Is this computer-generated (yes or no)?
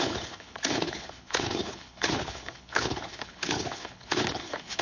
yes